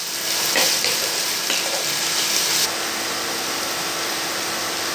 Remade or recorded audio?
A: recorded